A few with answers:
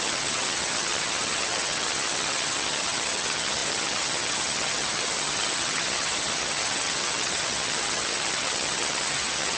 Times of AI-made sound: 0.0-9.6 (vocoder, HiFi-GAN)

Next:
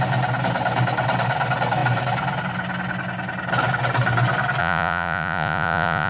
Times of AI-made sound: 4.6-6.1 (vocoder, Vocos)

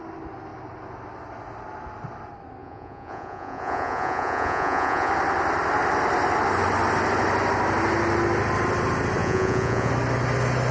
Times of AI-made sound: 2.6-5.1 (vocoder, Vocos); 9.2-9.9

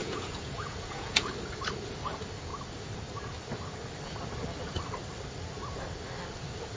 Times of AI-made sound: 0.0-1.3 (vocoder, Vocos)

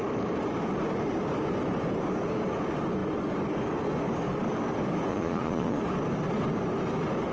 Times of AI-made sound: 5.1-5.8 (vocoder, Vocos)

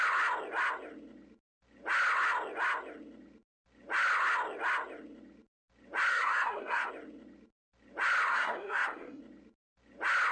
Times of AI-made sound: 6.1-6.9 (codec, SNAC); 8.3-9.2